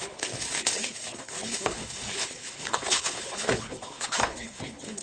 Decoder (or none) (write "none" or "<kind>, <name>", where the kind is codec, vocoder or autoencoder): codec, HILCodec